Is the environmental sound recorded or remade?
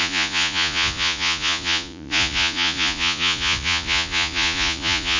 remade